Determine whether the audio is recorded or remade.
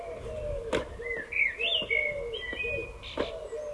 recorded